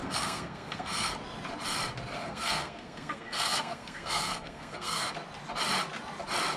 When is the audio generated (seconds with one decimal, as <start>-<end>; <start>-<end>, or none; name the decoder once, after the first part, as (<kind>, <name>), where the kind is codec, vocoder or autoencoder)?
0.0-1.1 (codec, SNAC); 2.2-5.1

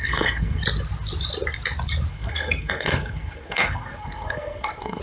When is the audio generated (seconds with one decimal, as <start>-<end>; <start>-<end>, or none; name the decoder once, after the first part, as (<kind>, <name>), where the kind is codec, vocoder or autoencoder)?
0.0-0.6 (codec, SNAC); 2.1-5.0

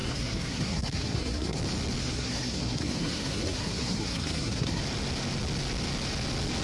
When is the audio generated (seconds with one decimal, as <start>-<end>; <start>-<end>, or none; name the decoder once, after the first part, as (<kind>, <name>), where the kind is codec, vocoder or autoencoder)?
0.0-1.6 (codec, SNAC); 2.0-4.8

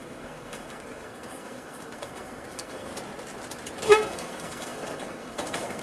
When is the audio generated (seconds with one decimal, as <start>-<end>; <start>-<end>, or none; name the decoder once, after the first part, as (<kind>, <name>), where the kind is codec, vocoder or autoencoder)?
0.0-2.9 (codec, SNAC); 3.8-5.8

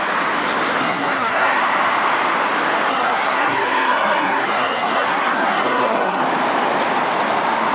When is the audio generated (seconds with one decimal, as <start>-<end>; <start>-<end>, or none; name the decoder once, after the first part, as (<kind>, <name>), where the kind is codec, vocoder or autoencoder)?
0.8-1.6 (codec, SNAC); 2.9-6.2

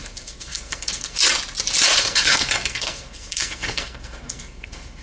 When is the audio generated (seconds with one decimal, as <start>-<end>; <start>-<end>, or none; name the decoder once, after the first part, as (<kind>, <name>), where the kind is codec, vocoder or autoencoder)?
0.0-1.2 (codec, SNAC); 2.0-5.0

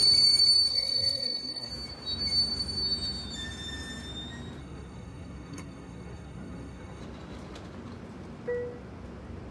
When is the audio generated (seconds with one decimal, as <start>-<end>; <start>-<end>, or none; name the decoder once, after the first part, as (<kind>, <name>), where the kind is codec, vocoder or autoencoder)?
0.7-1.7 (codec, SNAC); 4.6-7.0